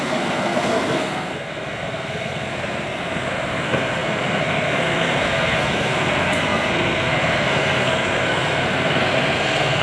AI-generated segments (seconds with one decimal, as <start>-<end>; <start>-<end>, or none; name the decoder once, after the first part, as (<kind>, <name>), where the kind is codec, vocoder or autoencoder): 0.0-9.8 (codec, SNAC)